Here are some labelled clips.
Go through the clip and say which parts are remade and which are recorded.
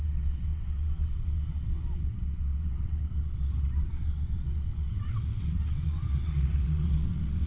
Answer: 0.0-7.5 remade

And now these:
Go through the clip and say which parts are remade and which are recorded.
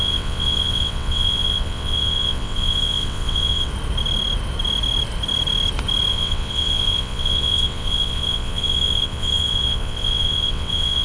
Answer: 0.0-3.7 remade; 3.7-6.1 recorded; 6.1-11.0 remade